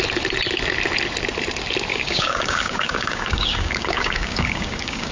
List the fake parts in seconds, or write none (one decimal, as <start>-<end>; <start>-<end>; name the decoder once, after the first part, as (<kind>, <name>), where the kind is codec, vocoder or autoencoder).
1.9-5.1 (codec, DAC)